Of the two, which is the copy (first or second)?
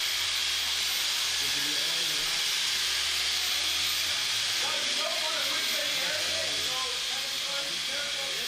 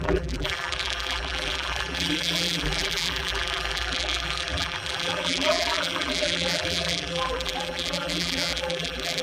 second